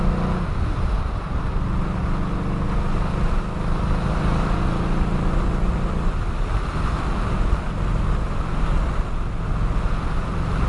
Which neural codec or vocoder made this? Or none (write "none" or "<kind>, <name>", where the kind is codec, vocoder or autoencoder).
none